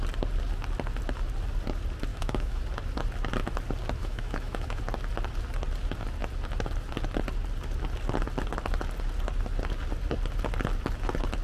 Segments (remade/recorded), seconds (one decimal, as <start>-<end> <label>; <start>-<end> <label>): 0.0-2.1 recorded; 2.1-2.6 remade; 2.6-4.0 recorded; 4.0-4.8 remade; 4.8-11.4 recorded